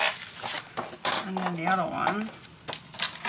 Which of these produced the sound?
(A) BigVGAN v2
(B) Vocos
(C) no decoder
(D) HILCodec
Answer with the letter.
C